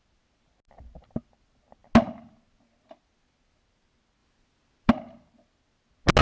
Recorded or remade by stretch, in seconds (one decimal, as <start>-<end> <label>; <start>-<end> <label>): 0.0-6.2 recorded